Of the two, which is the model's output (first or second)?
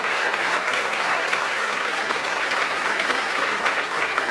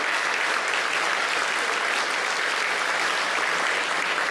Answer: first